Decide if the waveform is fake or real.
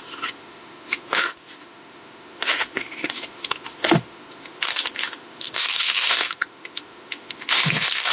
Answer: fake